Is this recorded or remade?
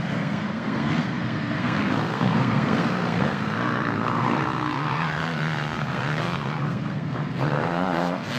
remade